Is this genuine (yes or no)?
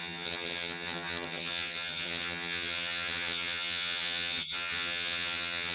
no